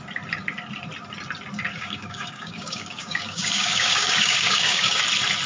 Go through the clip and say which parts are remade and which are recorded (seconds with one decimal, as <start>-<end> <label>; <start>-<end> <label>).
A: 0.0-1.7 recorded; 1.7-5.0 remade; 5.0-5.5 recorded